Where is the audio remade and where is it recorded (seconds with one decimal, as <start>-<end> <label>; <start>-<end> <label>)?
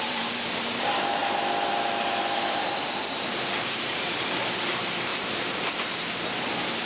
0.0-1.2 remade; 1.2-1.7 recorded; 1.7-5.1 remade; 5.1-5.6 recorded; 5.6-6.9 remade